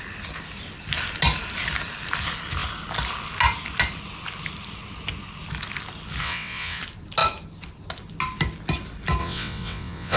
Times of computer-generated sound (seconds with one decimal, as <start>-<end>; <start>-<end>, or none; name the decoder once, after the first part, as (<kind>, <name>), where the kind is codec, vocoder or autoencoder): 6.2-6.8 (vocoder, WaveNeXt); 9.2-10.2